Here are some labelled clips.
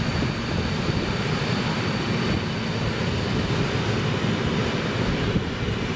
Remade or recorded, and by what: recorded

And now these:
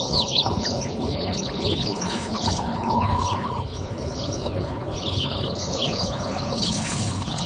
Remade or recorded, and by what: remade, codec, HILCodec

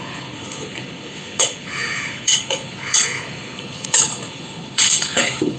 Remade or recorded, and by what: remade, codec, HILCodec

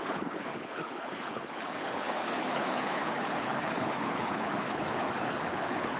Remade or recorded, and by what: remade, codec, HILCodec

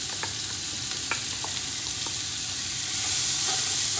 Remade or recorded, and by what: recorded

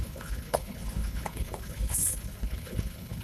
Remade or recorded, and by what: remade, codec, HILCodec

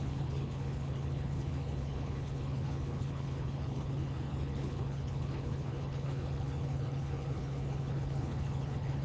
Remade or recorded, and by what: remade, codec, HILCodec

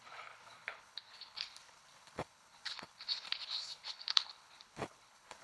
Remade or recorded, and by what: remade, codec, HILCodec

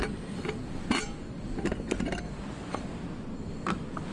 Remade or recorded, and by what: recorded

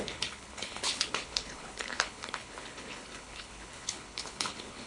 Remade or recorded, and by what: remade, codec, HILCodec